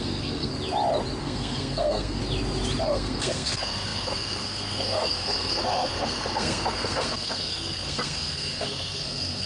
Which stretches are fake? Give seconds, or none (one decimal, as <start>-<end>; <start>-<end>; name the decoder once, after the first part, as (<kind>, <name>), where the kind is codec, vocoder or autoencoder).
0.0-0.5 (codec, SNAC); 1.2-2.2; 2.8-9.5